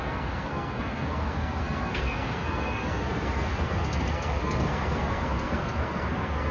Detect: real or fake fake